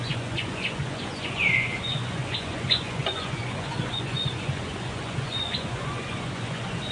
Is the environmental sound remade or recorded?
remade